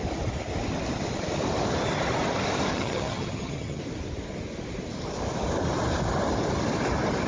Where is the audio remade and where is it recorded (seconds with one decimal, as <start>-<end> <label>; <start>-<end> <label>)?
0.0-2.7 recorded; 2.7-3.8 remade; 3.8-7.3 recorded

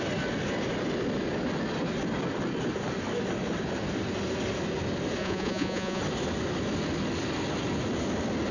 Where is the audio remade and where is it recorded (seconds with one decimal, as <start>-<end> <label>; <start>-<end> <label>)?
0.0-5.2 recorded; 5.2-6.0 remade; 6.0-8.5 recorded

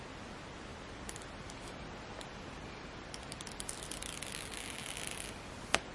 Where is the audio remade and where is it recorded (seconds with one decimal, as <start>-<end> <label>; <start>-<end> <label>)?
0.0-5.9 recorded

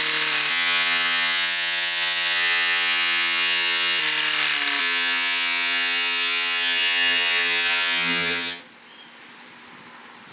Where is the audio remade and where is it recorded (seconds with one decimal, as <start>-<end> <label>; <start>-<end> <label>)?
0.0-0.5 recorded; 0.5-4.0 remade; 4.0-4.8 recorded; 4.8-8.6 remade; 8.6-10.3 recorded

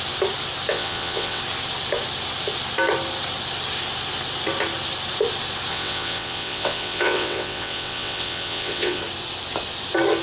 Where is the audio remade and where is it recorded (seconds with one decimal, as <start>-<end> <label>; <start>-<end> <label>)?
0.0-0.7 recorded; 0.7-1.4 remade; 1.4-5.7 recorded; 5.7-9.0 remade; 9.0-10.2 recorded

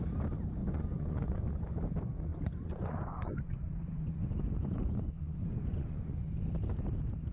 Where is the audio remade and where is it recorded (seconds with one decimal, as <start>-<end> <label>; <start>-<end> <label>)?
0.0-0.6 recorded; 0.6-1.5 remade; 1.5-2.3 recorded; 2.3-6.3 remade; 6.3-7.3 recorded